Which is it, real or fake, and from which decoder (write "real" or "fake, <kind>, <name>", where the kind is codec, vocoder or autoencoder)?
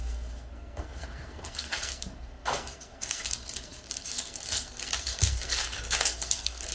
fake, codec, SNAC